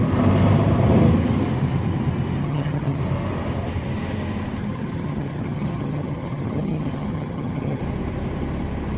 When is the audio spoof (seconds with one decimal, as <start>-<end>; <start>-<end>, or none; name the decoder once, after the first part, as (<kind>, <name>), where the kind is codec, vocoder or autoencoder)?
2.4-3.0 (vocoder, HiFi-GAN); 4.6-7.8